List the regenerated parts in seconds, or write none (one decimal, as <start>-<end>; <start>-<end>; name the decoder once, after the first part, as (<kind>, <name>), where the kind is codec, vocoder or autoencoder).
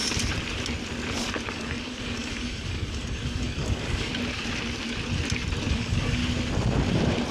1.5-4.1 (codec, DAC); 5.7-6.2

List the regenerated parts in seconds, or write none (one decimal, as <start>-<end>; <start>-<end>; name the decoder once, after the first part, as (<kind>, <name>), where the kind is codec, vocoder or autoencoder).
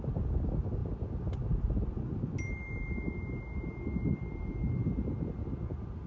none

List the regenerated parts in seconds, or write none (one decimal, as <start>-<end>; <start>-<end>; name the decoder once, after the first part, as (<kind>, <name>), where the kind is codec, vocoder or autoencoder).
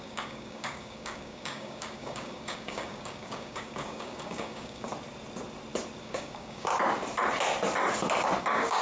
0.0-4.9 (codec, DAC); 6.0-6.7; 8.4-8.8